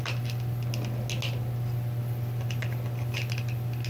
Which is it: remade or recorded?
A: recorded